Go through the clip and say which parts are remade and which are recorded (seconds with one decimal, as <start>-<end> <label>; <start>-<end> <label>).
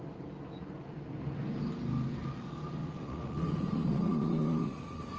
0.0-2.8 recorded; 2.8-5.2 remade